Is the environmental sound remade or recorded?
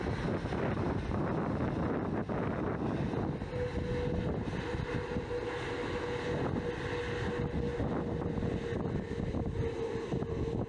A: recorded